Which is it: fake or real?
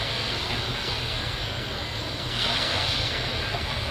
fake